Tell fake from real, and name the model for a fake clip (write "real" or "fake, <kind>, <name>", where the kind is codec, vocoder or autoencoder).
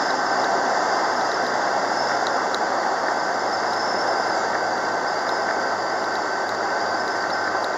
real